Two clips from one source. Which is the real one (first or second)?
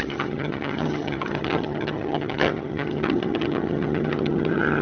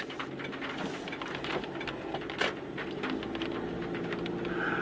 second